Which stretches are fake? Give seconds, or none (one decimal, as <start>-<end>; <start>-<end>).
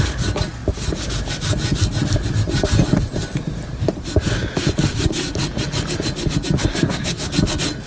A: 6.7-7.3